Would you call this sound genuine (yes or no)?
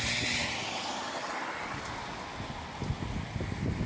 yes